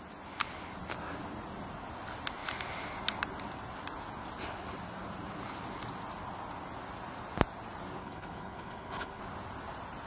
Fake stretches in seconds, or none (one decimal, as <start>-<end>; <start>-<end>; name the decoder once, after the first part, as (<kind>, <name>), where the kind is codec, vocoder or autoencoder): 8.0-9.2 (codec, HILCodec)